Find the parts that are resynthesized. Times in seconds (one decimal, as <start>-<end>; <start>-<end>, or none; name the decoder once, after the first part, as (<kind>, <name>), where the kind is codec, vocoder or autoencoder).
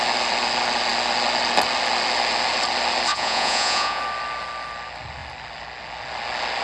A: 3.1-4.0 (vocoder, Vocos)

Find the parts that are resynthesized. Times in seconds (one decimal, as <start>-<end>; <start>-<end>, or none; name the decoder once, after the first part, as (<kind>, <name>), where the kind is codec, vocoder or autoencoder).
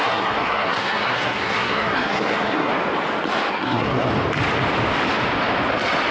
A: 0.0-2.7 (codec, SNAC); 3.5-4.1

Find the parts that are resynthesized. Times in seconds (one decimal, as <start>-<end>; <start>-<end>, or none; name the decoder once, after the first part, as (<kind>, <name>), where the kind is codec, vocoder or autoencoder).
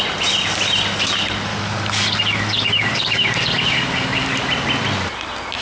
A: 1.5-4.4 (codec, DAC)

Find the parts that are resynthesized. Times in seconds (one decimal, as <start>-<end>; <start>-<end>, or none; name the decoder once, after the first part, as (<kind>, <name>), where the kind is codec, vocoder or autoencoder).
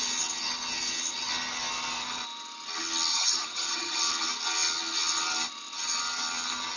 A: 3.1-4.0 (vocoder, HiFi-GAN)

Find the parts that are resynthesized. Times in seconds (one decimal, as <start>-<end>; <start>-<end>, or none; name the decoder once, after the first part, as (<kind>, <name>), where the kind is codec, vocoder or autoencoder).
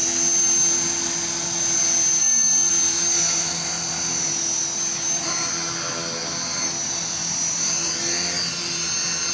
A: 2.2-2.7 (codec, DAC)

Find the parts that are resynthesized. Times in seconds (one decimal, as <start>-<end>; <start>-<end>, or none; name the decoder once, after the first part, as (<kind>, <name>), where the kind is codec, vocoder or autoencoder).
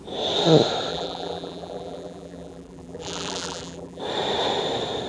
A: 0.9-4.0 (vocoder, BigVGAN v2)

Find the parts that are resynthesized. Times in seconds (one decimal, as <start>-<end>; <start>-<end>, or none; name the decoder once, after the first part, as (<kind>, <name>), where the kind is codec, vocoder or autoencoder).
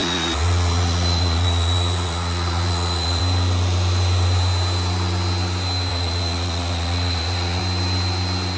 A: 0.0-3.2 (vocoder, Vocos); 5.9-7.6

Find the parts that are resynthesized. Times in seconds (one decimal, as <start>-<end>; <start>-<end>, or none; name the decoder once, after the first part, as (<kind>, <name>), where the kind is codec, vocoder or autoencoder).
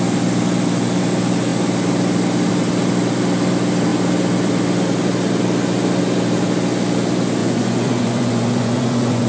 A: 7.4-9.3 (vocoder, Vocos)